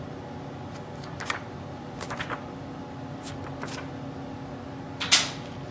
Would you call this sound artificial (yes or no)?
no